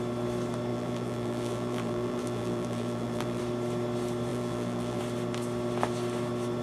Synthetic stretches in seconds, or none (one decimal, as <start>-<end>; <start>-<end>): 0.7-3.4; 4.3-5.0